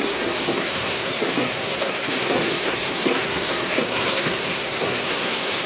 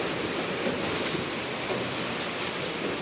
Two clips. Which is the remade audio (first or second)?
first